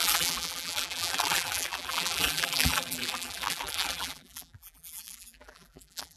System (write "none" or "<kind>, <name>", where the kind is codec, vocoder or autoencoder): vocoder, BigVGAN v2